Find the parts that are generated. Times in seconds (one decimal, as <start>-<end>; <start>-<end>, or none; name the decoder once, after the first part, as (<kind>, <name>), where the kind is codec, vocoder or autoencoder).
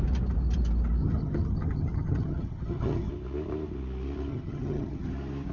1.0-3.1 (vocoder, HiFi-GAN); 4.3-5.1